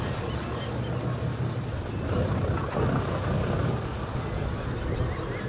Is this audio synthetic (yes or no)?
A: no